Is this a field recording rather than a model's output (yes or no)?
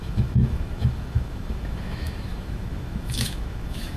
no